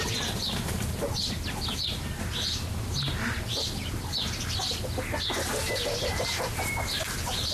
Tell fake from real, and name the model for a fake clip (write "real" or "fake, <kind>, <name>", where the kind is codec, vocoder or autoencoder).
real